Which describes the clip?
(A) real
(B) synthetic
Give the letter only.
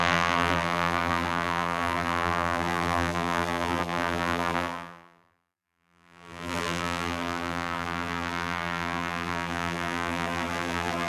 B